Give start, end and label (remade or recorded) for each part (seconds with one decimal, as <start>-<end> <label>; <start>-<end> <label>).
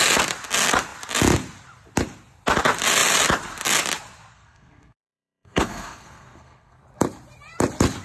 0.0-4.3 recorded; 4.3-6.8 remade; 6.8-8.0 recorded